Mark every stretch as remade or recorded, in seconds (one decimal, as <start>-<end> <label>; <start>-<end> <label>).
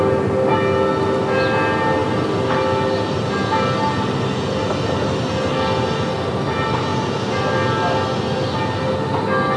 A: 0.0-9.6 recorded